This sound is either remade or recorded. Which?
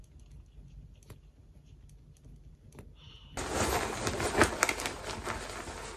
recorded